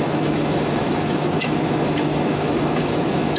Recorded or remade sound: remade